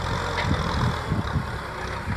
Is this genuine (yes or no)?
yes